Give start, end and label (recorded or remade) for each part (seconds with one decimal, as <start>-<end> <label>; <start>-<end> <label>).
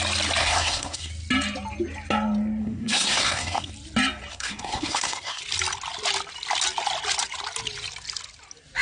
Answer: 0.0-0.4 recorded; 0.4-1.1 remade; 1.1-2.6 recorded; 2.6-3.7 remade; 3.7-4.3 recorded; 4.3-5.4 remade; 5.4-8.8 recorded